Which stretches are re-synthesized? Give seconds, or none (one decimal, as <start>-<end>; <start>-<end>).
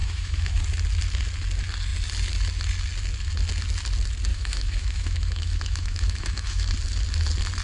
0.0-0.6; 4.3-6.7